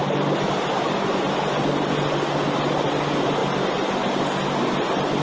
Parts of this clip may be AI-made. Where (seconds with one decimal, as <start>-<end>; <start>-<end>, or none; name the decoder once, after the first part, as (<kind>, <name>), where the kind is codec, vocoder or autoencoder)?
none